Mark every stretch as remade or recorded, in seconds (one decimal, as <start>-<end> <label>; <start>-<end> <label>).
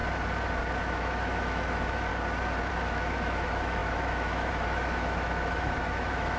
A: 0.0-0.8 recorded; 0.8-2.1 remade; 2.1-2.7 recorded; 2.7-6.4 remade